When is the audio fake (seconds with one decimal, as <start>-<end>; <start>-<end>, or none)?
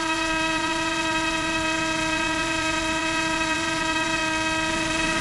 0.0-4.2; 4.7-5.2